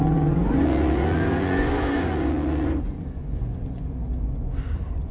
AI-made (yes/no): yes